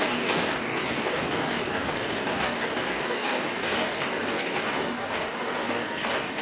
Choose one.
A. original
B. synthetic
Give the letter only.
B